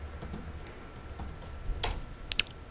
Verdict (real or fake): real